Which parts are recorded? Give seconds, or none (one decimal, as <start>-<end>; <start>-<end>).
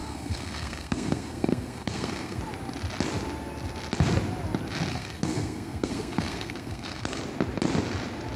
2.4-4.9; 7.2-8.4